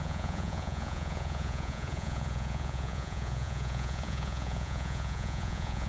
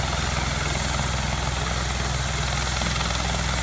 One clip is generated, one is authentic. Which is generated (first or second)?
first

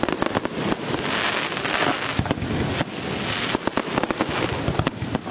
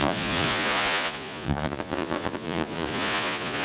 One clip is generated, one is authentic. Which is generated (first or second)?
second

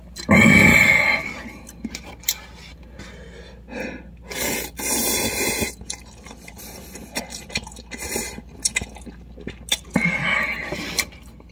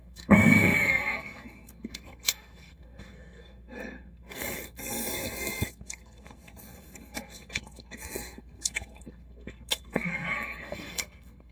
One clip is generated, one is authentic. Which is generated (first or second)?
second